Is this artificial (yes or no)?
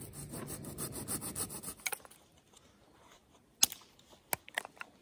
no